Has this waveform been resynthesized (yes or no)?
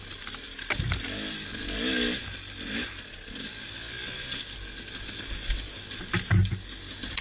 no